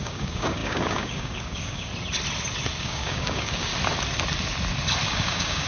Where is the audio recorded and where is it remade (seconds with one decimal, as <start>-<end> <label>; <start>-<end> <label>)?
0.0-1.9 remade; 1.9-2.8 recorded; 2.8-3.7 remade; 3.7-5.1 recorded; 5.1-5.7 remade